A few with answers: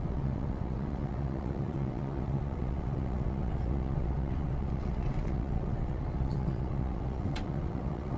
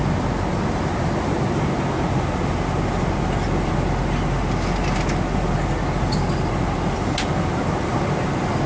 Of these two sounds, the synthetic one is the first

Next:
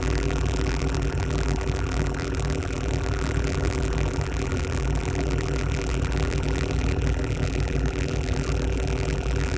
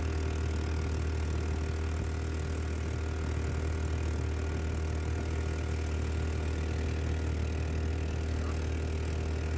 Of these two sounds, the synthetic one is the first